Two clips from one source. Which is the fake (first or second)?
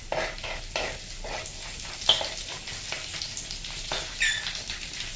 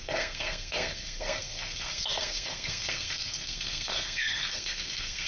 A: second